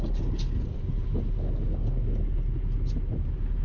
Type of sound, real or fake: real